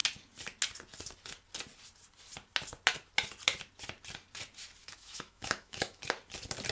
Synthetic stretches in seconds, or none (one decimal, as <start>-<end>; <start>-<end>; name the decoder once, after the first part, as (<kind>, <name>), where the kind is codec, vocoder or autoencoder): 4.8-6.0 (autoencoder, DAC-VAE)